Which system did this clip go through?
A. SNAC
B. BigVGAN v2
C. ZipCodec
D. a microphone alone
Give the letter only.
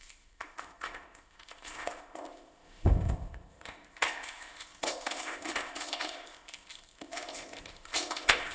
C